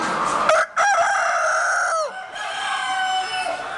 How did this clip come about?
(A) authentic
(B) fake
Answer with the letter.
A